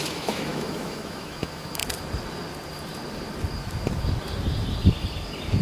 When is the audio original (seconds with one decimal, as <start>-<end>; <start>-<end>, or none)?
1.8-5.6